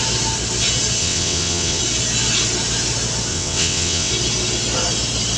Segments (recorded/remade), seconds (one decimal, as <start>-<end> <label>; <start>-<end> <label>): 0.0-1.0 recorded; 1.0-1.8 remade; 1.8-3.3 recorded; 3.3-4.1 remade; 4.1-5.4 recorded